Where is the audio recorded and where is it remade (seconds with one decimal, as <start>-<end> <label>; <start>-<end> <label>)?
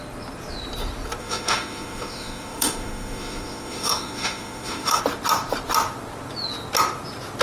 0.0-1.2 recorded; 1.2-5.0 remade; 5.0-7.4 recorded